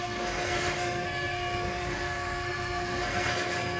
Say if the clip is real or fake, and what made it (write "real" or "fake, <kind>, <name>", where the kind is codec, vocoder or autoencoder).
fake, codec, SNAC